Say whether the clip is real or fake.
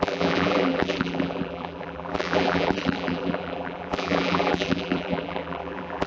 fake